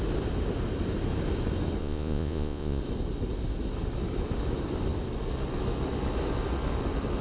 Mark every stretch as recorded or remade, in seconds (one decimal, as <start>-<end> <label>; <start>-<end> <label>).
0.0-1.8 recorded; 1.8-2.8 remade; 2.8-7.2 recorded